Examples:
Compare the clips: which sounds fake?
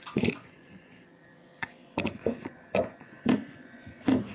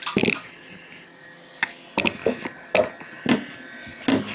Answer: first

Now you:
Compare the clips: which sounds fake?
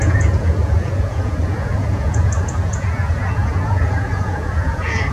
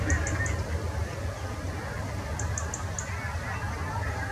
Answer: first